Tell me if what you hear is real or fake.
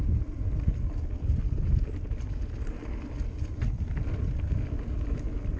real